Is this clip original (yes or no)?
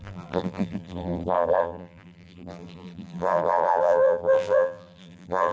no